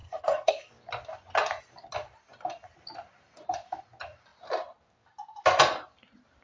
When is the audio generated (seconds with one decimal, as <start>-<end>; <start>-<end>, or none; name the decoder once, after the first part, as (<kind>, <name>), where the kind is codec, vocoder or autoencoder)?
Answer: 0.0-0.7 (codec, SNAC)